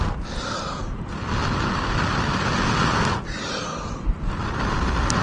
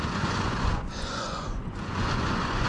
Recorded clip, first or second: first